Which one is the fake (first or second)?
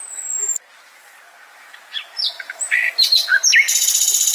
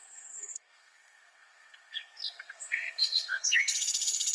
second